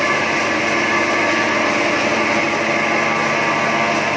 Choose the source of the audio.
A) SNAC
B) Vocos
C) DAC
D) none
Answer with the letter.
D